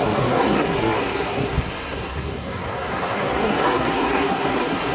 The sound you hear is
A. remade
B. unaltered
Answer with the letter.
A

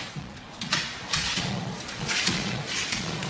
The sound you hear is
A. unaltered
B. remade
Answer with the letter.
B